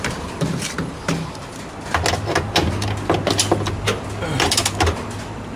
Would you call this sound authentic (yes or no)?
yes